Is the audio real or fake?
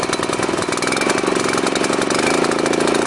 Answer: real